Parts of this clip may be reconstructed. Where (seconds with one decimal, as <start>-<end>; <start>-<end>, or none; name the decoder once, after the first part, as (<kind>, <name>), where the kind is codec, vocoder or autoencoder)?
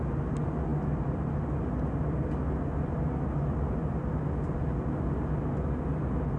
none